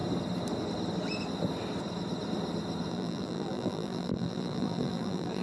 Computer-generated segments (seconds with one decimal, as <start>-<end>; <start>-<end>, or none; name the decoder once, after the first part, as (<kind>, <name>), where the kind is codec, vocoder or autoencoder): 2.9-5.4 (vocoder, BigVGAN v2)